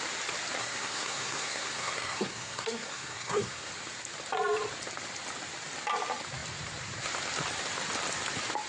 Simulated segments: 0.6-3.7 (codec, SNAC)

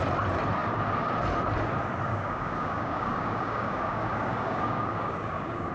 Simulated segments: 2.1-5.7 (codec, DAC)

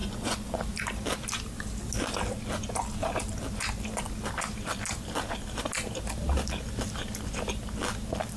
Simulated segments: 0.0-0.6 (vocoder, Vocos)

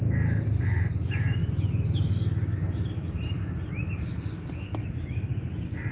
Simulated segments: none

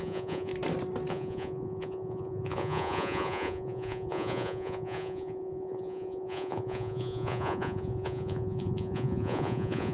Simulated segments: 0.0-0.5 (vocoder, Vocos); 1.1-9.9

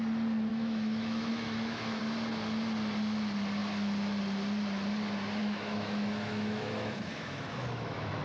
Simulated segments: 0.5-2.0 (autoencoder, DAC-VAE); 5.4-8.2

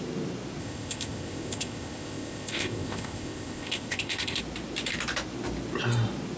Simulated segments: 0.6-4.4 (codec, ZipCodec)